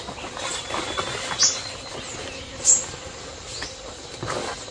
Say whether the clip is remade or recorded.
recorded